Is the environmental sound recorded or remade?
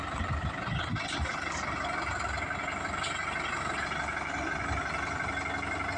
recorded